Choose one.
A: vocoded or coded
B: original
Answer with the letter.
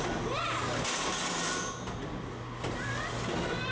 B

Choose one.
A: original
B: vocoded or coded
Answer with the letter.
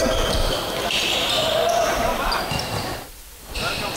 B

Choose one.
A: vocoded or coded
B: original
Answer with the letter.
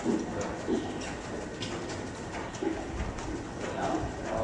B